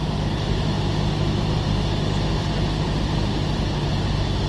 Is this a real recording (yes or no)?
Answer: yes